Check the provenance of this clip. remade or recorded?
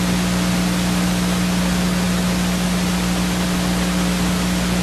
recorded